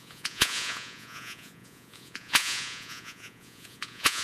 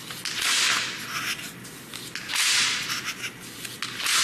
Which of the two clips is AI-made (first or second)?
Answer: first